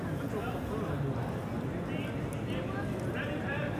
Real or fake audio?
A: real